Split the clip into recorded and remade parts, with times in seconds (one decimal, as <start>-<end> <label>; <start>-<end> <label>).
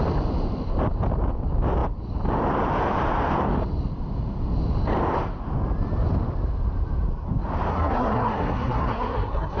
0.0-7.7 recorded; 7.7-9.6 remade